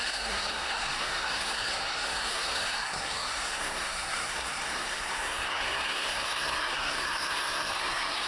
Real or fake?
fake